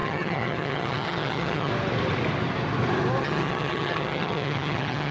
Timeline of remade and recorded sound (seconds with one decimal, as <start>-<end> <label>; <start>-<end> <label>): 0.0-1.7 remade; 1.7-3.2 recorded; 3.2-5.1 remade